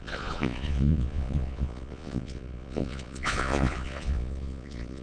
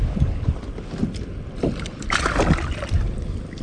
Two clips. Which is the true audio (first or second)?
second